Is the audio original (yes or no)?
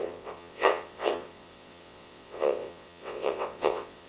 no